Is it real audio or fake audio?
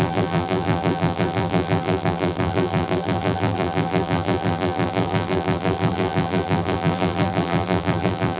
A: fake